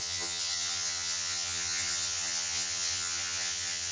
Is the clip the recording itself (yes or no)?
no